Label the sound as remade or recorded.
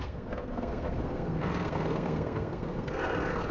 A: remade